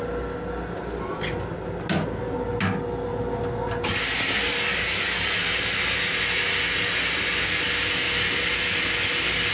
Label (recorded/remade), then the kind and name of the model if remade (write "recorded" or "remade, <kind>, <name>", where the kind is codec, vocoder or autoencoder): recorded